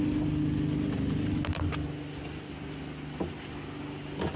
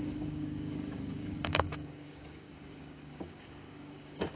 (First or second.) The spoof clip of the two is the second